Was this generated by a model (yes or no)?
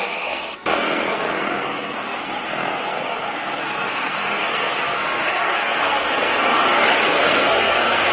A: yes